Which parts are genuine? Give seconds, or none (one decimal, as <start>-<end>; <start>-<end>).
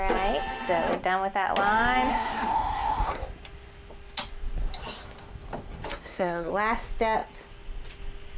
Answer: 0.0-2.1; 3.2-5.9; 6.5-8.4